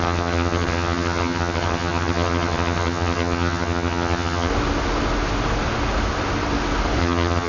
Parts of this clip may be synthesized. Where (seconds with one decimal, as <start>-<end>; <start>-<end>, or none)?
0.0-4.5; 7.0-7.5